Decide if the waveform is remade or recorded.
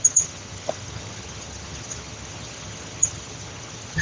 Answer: remade